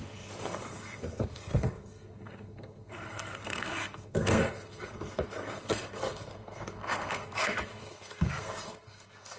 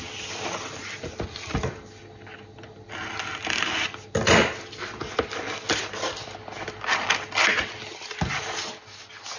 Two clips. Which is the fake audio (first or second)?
first